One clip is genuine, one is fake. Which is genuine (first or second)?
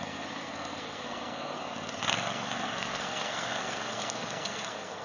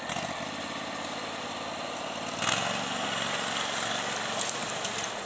second